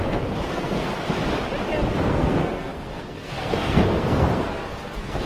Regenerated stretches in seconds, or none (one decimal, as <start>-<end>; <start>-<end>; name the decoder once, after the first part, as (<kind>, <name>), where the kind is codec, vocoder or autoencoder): 0.0-0.9 (codec, SNAC); 2.0-5.3